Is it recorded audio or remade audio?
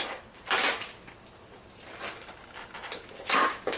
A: recorded